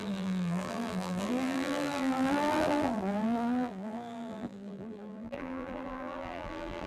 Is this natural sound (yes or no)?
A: no